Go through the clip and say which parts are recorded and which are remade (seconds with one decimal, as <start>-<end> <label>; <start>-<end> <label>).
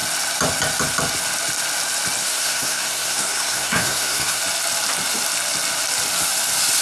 0.0-2.2 recorded; 2.2-4.4 remade; 4.4-6.8 recorded